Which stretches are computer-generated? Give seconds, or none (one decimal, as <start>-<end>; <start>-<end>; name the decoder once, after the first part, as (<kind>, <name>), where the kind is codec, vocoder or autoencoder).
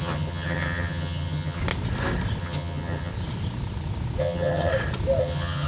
0.0-1.6 (vocoder, HiFi-GAN); 2.4-3.1; 4.2-4.7; 5.2-5.7